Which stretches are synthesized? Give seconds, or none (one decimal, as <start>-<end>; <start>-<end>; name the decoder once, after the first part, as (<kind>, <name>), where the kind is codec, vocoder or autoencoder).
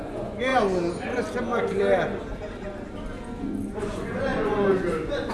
0.0-0.5 (vocoder, Vocos); 3.7-5.3